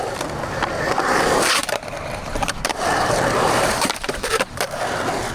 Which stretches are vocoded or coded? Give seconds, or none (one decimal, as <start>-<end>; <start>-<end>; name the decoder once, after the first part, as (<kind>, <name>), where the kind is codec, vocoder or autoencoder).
1.6-4.8 (vocoder, BigVGAN v2)